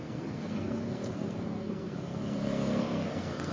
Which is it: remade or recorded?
remade